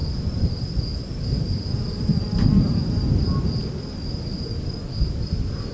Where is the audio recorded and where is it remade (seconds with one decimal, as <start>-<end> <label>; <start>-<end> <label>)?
0.0-2.6 remade; 2.6-5.7 recorded